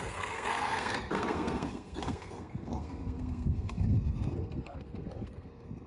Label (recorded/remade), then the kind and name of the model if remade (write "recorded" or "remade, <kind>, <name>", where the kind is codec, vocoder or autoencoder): remade, codec, SNAC